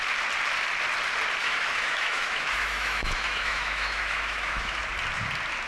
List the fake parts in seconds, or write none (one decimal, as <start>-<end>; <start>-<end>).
1.4-4.8